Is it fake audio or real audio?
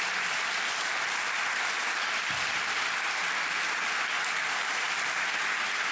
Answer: real